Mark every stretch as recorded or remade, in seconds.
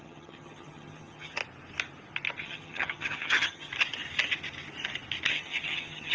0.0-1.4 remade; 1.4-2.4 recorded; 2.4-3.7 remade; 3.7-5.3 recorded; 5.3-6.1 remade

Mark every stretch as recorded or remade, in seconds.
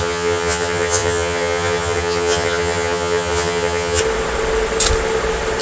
0.0-4.0 remade; 4.0-5.6 recorded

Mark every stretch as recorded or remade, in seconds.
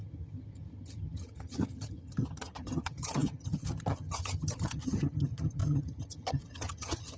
0.0-7.2 remade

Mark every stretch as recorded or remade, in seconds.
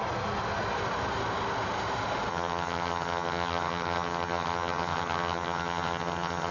0.0-2.3 recorded; 2.3-6.5 remade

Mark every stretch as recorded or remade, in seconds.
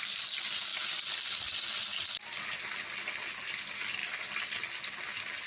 0.0-5.5 recorded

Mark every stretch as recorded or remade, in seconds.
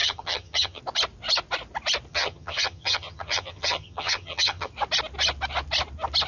0.0-0.8 remade; 0.8-2.1 recorded; 2.1-4.7 remade; 4.7-6.3 recorded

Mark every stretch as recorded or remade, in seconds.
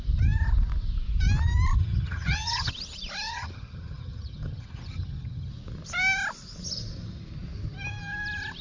0.0-1.8 recorded; 1.8-2.7 remade; 2.7-3.3 recorded; 3.3-5.5 remade; 5.5-8.6 recorded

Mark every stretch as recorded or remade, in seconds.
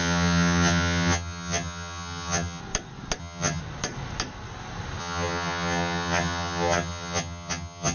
0.0-2.6 remade; 2.6-3.2 recorded; 3.2-3.6 remade; 3.6-5.0 recorded; 5.0-7.9 remade